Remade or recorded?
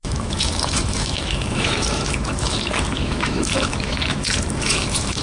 remade